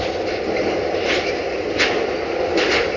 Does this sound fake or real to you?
real